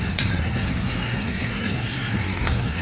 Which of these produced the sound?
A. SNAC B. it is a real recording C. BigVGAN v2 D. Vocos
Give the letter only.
A